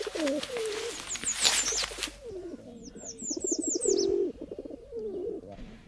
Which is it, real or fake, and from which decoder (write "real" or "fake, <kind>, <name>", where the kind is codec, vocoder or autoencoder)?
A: real